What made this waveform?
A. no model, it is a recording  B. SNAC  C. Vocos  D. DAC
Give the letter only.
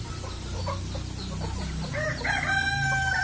A